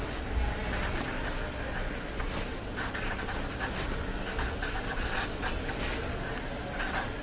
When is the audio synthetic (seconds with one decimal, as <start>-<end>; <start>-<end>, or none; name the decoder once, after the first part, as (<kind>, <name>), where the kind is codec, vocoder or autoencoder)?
none